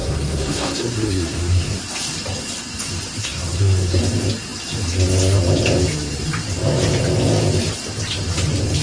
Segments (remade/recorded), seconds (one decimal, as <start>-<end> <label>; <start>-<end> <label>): 0.0-1.8 remade; 1.8-3.2 recorded; 3.2-4.0 remade; 4.0-8.8 recorded